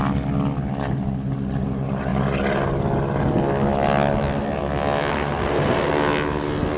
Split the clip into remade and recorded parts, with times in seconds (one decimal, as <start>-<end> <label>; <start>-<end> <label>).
0.0-5.1 recorded; 5.1-5.9 remade; 5.9-6.8 recorded